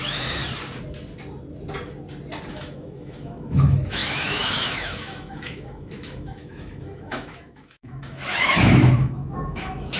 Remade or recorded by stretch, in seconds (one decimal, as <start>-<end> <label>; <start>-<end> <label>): 0.0-0.4 remade; 0.4-2.5 recorded; 2.5-10.0 remade